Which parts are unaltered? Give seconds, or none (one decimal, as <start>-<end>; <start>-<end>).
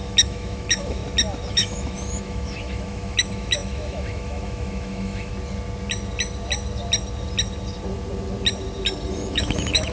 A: 1.0-1.5; 5.3-9.1